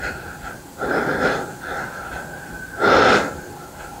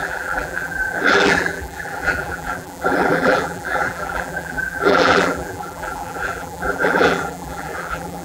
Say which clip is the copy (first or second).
second